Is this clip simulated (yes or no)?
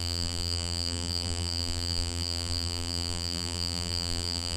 yes